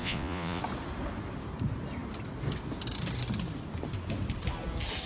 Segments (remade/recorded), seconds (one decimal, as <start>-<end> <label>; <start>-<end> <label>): 0.0-0.6 remade; 0.6-5.1 recorded